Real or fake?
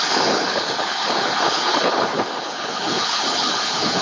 fake